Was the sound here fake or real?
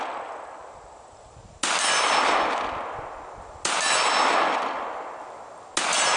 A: real